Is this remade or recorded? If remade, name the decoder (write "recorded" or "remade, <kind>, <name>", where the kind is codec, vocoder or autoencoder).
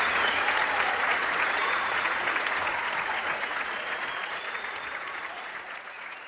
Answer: remade, vocoder, Vocos